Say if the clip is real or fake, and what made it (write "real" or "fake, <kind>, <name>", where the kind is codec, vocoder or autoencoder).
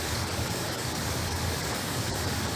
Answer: fake, codec, DAC